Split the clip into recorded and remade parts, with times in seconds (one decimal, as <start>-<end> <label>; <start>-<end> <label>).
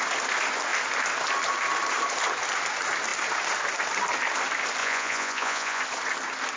0.0-4.8 recorded; 4.8-5.8 remade; 5.8-6.6 recorded